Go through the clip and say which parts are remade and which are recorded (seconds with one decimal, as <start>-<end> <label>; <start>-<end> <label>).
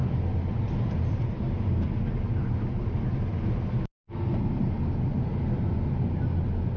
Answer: 0.0-6.8 recorded